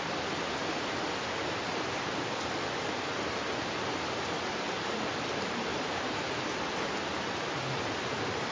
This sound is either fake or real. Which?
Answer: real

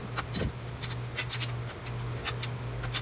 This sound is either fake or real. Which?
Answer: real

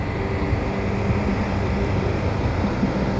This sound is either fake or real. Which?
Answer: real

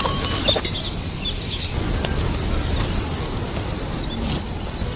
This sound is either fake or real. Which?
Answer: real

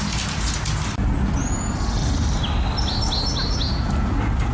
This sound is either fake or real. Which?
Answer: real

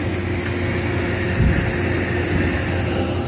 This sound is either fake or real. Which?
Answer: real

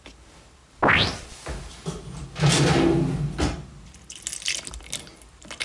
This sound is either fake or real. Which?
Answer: real